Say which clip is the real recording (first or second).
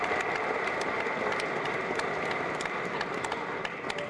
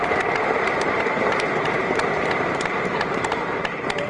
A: first